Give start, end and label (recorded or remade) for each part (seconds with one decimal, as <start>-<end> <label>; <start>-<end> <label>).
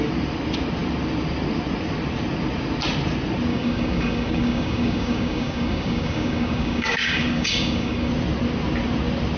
0.0-3.5 recorded; 3.5-8.1 remade; 8.1-9.4 recorded